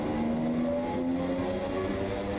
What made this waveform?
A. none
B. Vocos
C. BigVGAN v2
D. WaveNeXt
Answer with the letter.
A